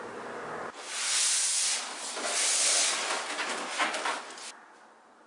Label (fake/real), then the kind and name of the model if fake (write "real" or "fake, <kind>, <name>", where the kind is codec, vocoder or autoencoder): real